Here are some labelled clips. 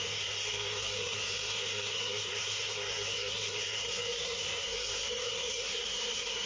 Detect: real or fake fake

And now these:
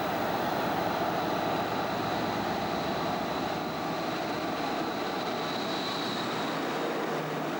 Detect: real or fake real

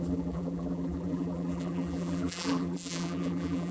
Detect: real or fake fake